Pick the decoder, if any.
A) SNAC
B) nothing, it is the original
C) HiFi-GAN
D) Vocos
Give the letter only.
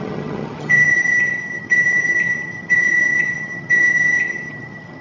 C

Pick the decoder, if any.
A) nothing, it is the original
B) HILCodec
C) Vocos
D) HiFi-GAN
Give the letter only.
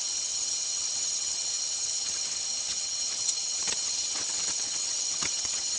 D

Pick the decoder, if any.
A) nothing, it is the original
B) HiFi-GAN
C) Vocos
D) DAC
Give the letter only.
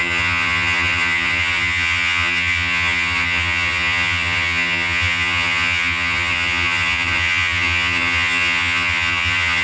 B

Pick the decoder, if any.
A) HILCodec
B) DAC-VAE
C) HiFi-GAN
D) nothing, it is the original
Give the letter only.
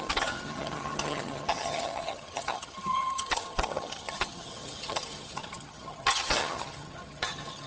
C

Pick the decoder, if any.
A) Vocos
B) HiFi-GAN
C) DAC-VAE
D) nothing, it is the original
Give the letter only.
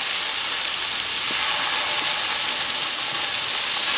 D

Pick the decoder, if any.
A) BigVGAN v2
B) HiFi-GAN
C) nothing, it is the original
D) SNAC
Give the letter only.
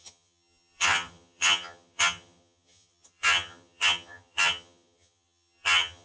B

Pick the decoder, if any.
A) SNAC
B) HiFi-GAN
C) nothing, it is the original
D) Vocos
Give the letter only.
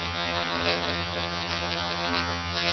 B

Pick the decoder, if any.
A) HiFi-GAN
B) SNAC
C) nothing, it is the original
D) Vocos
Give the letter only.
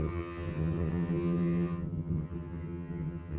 A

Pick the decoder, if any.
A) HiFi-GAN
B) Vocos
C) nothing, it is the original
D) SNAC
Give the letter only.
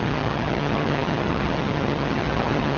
A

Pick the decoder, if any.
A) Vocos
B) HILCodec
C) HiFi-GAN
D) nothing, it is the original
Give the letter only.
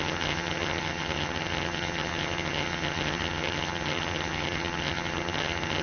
C